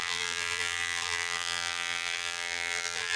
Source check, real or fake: fake